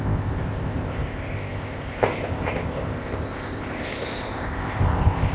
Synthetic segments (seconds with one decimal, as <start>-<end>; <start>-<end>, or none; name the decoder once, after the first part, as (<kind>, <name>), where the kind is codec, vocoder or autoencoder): 0.0-5.3 (codec, ZipCodec)